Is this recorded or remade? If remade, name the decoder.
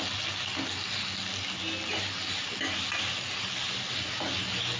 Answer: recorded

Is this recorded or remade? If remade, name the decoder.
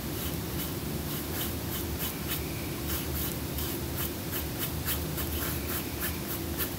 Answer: remade, vocoder, BigVGAN v2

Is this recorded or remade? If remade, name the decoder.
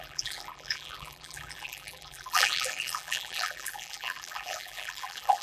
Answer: remade, vocoder, BigVGAN v2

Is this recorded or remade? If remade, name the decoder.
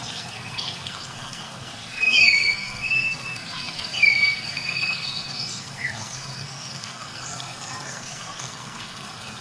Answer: remade, codec, SNAC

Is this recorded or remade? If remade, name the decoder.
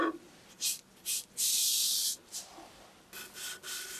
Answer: recorded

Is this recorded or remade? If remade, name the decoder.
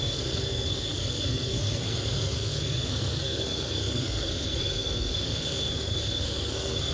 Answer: remade, codec, SNAC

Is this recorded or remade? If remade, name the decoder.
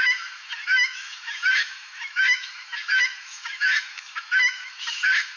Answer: remade, autoencoder, DAC-VAE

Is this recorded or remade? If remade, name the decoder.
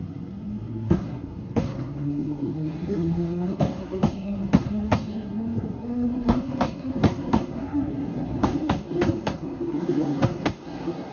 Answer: remade, codec, SNAC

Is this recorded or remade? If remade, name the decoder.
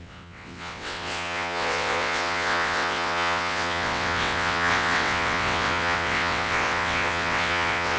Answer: remade, vocoder, WaveNeXt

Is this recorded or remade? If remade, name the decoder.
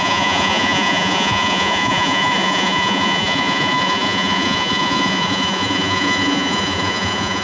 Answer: remade, vocoder, Vocos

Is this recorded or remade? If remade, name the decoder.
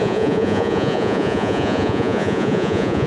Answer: remade, vocoder, Vocos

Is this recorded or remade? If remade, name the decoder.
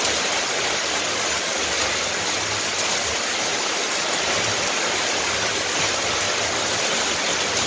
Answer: recorded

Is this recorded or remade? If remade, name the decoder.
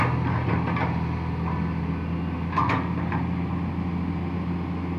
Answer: recorded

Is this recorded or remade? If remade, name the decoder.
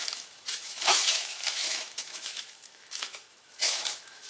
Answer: remade, autoencoder, DAC-VAE